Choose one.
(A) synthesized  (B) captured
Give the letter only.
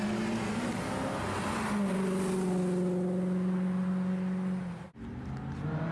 B